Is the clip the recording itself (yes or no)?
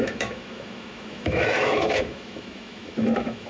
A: no